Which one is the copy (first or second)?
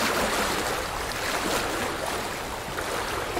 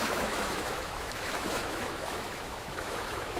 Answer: second